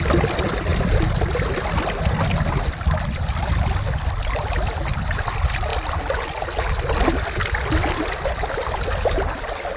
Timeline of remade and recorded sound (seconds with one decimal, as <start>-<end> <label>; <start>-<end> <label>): 0.0-9.8 recorded